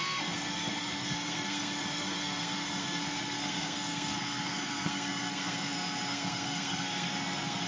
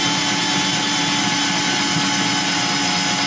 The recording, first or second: second